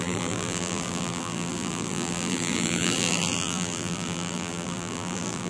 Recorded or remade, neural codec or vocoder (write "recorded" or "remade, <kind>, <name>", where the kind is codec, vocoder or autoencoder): remade, vocoder, BigVGAN v2